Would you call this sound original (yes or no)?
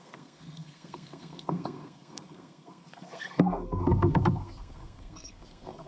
no